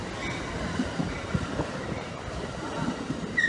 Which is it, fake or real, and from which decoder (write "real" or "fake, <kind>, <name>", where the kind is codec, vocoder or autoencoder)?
real